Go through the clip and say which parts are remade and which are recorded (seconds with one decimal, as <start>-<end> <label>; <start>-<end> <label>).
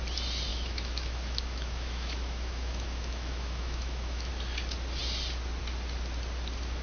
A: 0.0-0.5 recorded; 0.5-4.3 remade; 4.3-6.8 recorded